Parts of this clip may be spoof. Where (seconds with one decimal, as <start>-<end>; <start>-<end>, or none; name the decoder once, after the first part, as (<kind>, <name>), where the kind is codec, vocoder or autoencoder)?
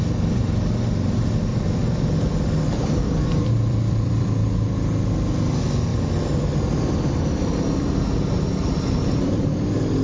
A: 1.5-4.8 (vocoder, BigVGAN v2); 5.9-9.5